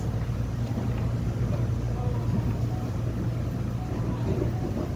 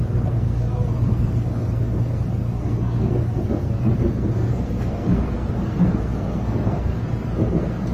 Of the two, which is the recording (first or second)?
first